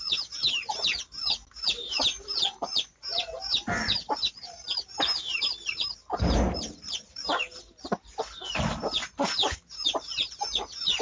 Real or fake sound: real